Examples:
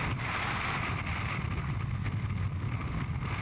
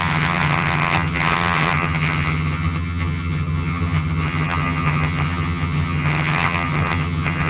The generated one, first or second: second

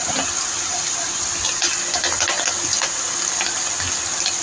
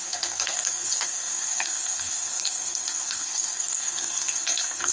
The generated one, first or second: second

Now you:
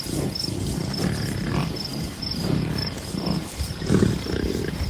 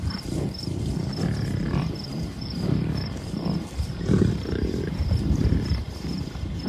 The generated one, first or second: second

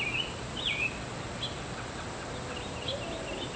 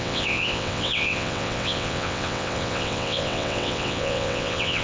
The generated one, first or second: second